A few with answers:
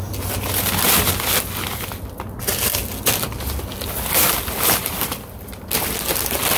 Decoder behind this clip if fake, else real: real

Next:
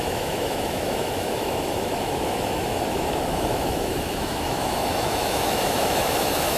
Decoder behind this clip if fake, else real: fake, autoencoder, DAC-VAE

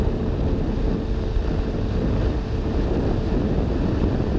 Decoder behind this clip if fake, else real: real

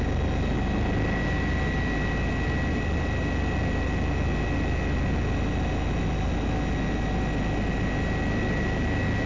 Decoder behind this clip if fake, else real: real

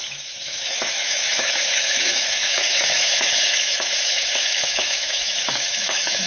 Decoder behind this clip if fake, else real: fake, autoencoder, DAC-VAE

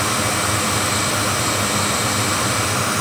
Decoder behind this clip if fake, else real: real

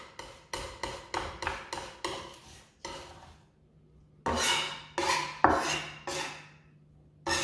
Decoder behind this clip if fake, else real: real